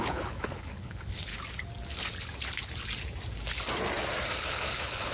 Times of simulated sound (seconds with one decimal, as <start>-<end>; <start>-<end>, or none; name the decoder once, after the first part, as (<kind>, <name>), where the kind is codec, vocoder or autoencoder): 0.0-1.3 (codec, HILCodec); 4.4-5.1